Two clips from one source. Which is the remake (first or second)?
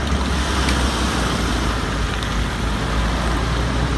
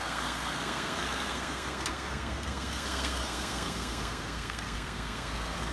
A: second